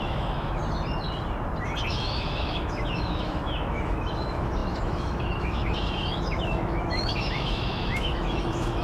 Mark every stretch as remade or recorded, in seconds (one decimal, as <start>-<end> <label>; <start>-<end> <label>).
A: 0.0-0.6 remade; 0.6-1.9 recorded; 1.9-8.8 remade